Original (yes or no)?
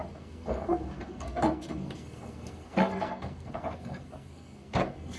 no